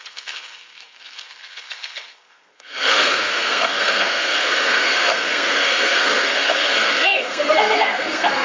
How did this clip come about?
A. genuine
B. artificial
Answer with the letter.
B